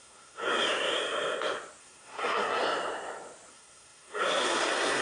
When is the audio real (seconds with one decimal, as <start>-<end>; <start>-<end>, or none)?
0.5-1.8; 2.6-3.5